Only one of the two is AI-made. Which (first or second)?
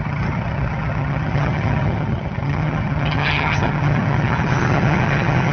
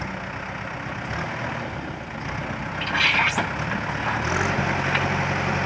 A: first